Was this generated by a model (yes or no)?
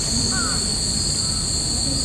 no